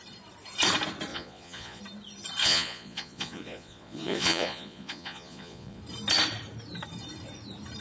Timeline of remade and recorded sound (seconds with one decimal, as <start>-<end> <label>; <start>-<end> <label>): 0.0-1.1 recorded; 1.1-1.8 remade; 1.8-2.4 recorded; 2.4-5.8 remade; 5.8-7.8 recorded